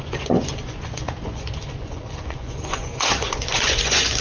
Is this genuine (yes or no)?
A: no